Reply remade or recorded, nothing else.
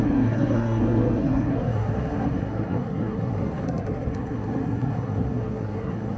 remade